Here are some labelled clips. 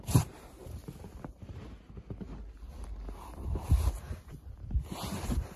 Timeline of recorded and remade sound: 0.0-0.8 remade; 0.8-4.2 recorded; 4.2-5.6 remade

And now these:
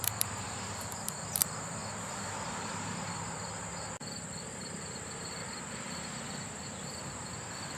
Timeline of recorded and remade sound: 0.0-3.3 remade; 3.3-4.4 recorded; 4.4-7.8 remade

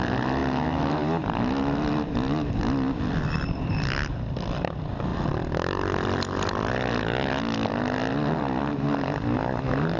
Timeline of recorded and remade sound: 0.0-5.1 recorded; 5.1-6.7 remade; 6.7-10.0 recorded